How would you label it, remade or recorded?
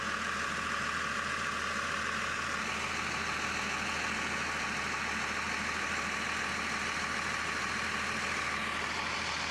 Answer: recorded